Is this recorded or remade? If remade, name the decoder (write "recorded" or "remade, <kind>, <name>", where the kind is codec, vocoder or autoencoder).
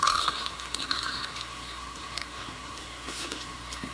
remade, codec, SNAC